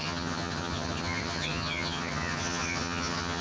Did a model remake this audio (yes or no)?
yes